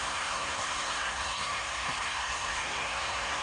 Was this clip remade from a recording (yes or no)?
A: yes